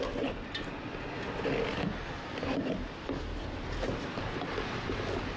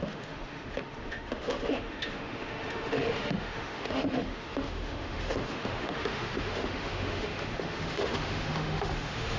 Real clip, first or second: first